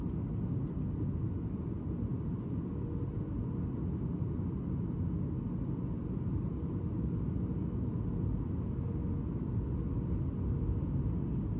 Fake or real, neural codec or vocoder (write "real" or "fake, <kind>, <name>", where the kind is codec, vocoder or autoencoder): real